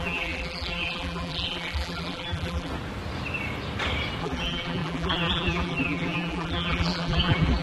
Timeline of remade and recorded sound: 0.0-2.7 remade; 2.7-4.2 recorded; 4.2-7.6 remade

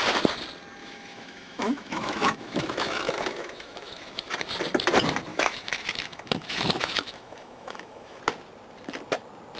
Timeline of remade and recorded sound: 0.0-0.8 recorded; 0.8-4.3 remade; 4.3-5.3 recorded; 5.3-8.2 remade; 8.2-9.6 recorded

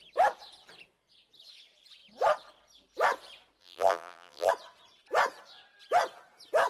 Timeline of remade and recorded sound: 0.0-3.6 recorded; 3.6-4.5 remade; 4.5-6.7 recorded